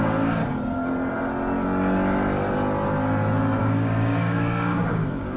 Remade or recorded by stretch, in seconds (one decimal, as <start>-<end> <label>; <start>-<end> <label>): 0.0-0.4 remade; 0.4-3.6 recorded; 3.6-5.4 remade